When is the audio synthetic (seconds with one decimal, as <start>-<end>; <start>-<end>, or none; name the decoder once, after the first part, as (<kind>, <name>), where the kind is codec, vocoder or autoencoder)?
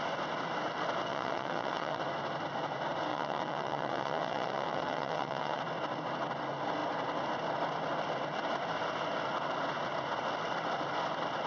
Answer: 1.1-2.0 (vocoder, WaveNeXt); 3.1-5.6